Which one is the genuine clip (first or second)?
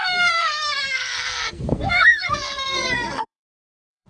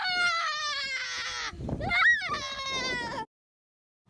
second